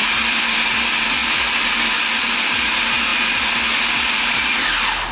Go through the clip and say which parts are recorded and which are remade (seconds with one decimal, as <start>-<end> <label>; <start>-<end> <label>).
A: 0.0-5.1 recorded